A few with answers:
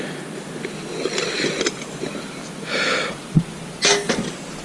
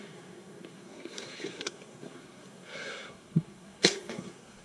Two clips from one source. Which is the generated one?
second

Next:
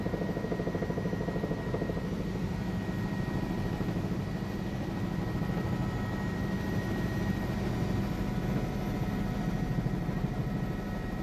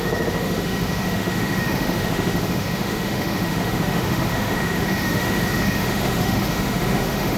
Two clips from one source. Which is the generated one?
second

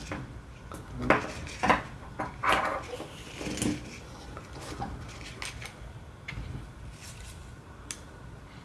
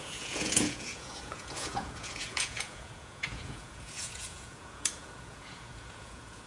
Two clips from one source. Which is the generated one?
second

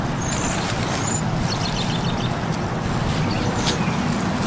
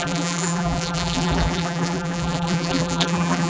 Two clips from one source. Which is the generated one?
second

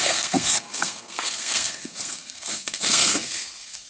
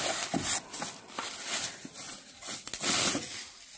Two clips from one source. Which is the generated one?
first